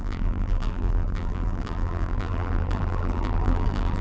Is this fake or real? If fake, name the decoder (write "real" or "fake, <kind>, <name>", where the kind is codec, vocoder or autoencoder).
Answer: fake, vocoder, BigVGAN v2